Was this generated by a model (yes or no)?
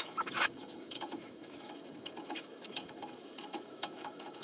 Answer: yes